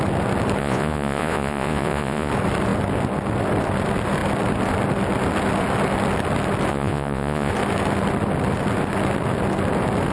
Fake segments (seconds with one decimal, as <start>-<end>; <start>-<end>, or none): 0.6-2.3; 6.7-7.5